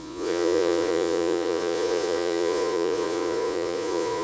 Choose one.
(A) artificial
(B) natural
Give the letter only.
A